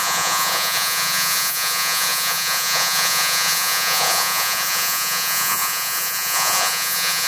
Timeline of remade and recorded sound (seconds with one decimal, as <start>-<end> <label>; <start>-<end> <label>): 0.0-7.3 remade